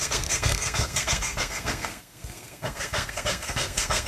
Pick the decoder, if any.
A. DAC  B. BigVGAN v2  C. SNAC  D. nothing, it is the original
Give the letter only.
C